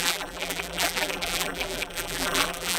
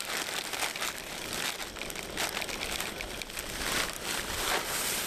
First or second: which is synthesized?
first